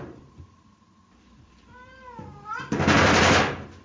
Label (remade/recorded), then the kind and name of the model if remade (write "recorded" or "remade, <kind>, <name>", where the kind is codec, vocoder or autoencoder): remade, vocoder, BigVGAN v2